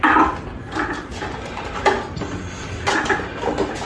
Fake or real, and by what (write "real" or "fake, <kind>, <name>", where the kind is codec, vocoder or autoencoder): real